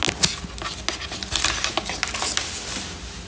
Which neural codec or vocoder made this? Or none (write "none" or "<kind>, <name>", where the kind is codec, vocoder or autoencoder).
none